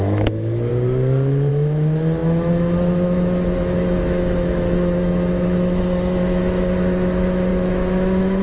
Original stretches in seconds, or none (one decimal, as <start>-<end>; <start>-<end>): 0.7-1.5